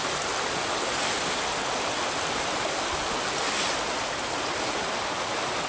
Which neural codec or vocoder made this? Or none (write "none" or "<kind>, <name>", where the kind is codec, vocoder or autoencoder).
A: none